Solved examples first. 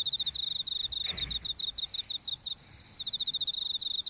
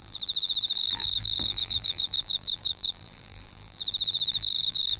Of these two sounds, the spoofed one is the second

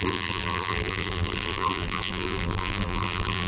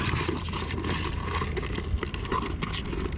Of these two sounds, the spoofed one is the first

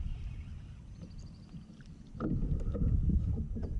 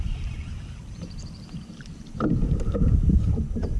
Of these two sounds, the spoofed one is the second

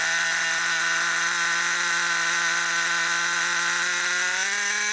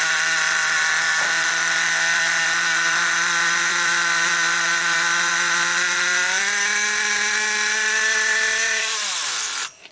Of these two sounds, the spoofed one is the second